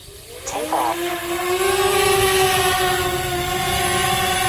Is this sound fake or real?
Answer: real